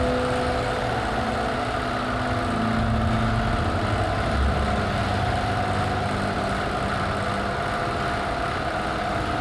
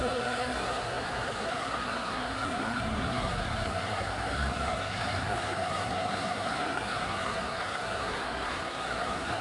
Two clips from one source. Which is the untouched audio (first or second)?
first